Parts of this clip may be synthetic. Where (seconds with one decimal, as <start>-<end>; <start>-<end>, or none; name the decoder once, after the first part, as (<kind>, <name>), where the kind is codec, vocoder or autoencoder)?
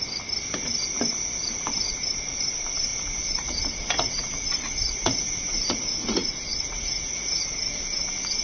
2.9-7.4 (vocoder, Vocos)